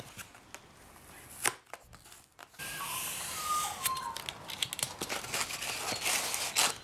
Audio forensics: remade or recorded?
recorded